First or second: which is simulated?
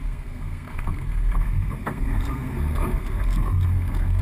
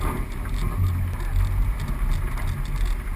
first